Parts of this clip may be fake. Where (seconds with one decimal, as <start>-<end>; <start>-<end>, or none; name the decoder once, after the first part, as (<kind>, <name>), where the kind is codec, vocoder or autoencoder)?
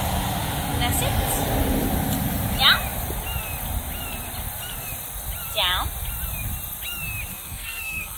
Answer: 7.3-8.2 (codec, SNAC)